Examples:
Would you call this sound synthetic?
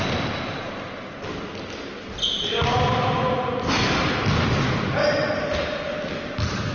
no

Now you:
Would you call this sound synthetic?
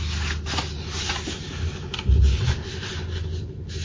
no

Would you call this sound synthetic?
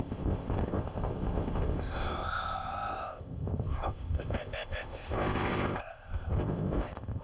yes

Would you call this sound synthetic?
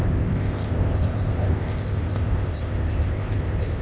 yes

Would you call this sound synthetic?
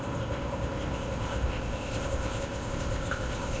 yes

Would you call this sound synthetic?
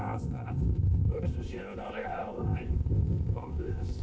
yes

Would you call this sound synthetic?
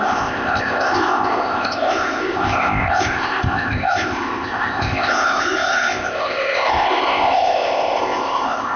yes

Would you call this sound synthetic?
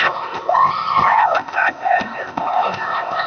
yes